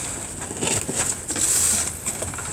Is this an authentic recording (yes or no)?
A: yes